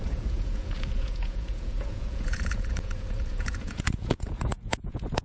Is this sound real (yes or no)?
no